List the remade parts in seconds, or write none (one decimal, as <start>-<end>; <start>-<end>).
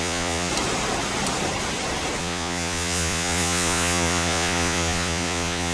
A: 0.0-0.5; 2.2-5.7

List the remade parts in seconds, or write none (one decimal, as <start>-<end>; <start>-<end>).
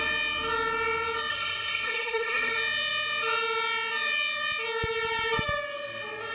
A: 1.3-2.5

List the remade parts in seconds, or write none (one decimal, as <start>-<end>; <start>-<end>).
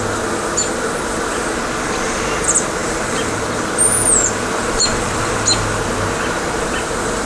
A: 2.8-3.7; 4.5-5.3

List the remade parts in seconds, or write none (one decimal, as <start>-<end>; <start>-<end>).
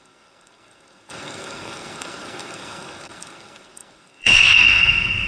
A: 0.0-5.3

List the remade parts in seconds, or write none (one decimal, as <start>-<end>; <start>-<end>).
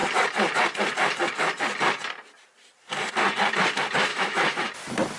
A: 4.1-4.7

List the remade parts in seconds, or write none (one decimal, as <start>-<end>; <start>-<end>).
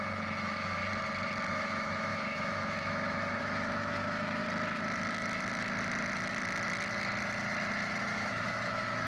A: 0.0-0.8; 1.5-4.4; 8.0-9.1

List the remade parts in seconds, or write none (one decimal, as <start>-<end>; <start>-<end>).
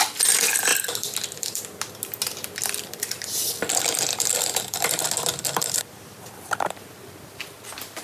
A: 0.7-1.6; 4.1-5.0; 5.6-6.5